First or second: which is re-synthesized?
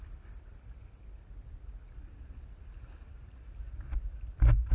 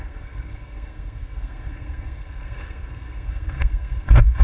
second